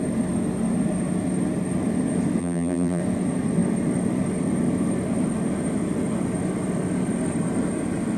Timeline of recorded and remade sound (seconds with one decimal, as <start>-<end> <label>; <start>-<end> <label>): 0.0-2.4 recorded; 2.4-3.0 remade; 3.0-8.2 recorded